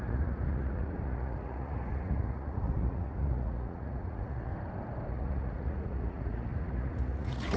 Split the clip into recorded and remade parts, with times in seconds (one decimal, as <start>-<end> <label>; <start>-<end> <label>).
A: 0.0-4.5 remade; 4.5-5.1 recorded; 5.1-7.6 remade